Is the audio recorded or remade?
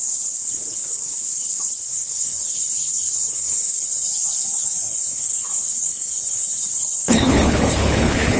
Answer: remade